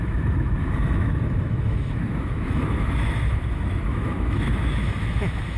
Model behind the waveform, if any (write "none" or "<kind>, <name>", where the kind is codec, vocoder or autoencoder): autoencoder, DAC-VAE